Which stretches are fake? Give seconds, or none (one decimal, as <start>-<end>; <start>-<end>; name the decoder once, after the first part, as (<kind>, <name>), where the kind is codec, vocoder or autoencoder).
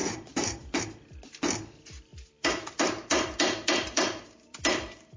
0.0-0.8 (vocoder, BigVGAN v2); 2.1-5.2